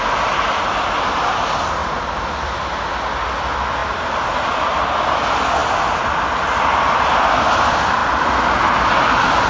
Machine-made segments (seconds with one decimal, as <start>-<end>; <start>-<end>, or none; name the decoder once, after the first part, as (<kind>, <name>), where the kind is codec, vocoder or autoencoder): 1.8-2.8 (vocoder, BigVGAN v2); 3.8-5.0; 8.0-9.5